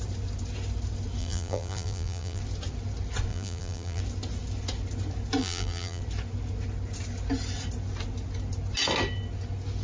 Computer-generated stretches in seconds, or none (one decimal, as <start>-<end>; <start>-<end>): 1.2-2.4; 3.3-4.0; 5.4-6.0